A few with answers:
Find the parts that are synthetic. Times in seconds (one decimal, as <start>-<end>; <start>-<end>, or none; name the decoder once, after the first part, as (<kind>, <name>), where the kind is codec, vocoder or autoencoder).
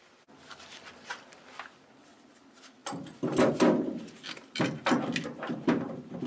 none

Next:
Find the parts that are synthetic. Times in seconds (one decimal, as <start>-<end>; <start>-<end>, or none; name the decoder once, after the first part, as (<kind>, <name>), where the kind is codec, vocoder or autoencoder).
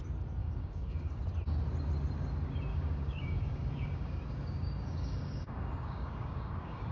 0.4-1.2 (codec, DAC); 2.7-6.9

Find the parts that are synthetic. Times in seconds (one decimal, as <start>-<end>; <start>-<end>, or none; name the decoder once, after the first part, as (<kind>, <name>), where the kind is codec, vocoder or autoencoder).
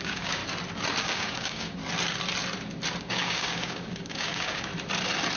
0.0-0.4 (codec, DAC); 1.0-1.8; 3.0-4.7